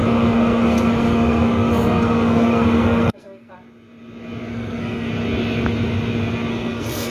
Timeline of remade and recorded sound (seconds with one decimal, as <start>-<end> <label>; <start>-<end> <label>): 0.0-3.5 remade; 3.5-4.5 recorded; 4.5-5.1 remade; 5.1-6.5 recorded; 6.5-7.1 remade